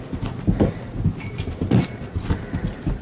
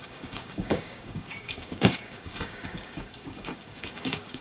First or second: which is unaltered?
first